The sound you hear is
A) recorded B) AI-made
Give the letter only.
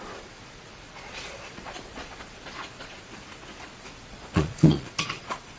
B